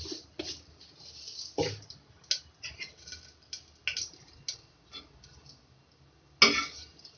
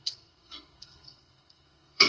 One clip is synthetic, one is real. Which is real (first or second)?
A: first